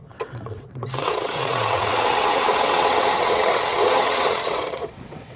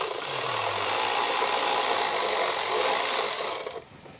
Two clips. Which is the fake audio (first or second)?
first